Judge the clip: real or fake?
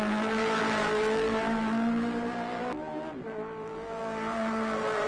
fake